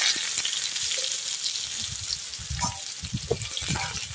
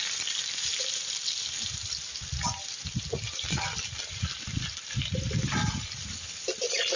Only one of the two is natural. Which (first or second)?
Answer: first